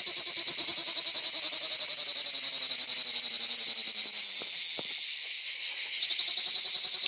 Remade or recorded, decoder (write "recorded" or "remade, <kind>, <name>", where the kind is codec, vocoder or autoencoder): recorded